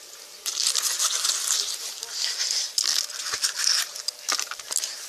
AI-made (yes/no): no